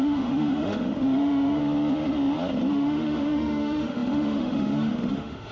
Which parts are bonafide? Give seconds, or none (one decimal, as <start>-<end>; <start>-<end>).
1.6-2.7